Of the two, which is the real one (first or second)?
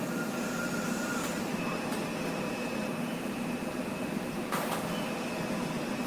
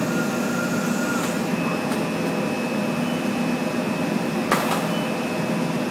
second